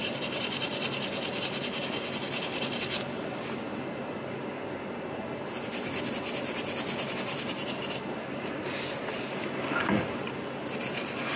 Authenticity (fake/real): real